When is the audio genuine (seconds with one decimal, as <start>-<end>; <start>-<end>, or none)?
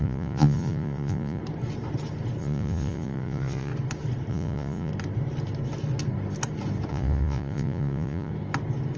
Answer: 1.4-2.4; 3.7-4.3; 4.9-6.9; 8.3-9.0